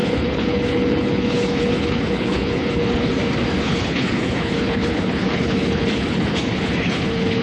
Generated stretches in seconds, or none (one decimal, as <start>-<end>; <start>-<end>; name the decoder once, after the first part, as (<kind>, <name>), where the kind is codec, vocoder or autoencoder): 0.0-3.1 (codec, HILCodec); 3.6-7.4